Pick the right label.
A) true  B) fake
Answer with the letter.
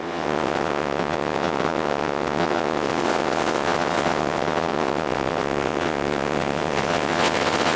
B